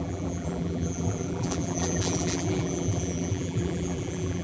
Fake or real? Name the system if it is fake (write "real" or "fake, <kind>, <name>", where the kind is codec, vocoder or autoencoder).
fake, vocoder, BigVGAN v2